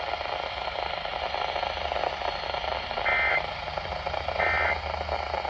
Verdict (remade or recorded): recorded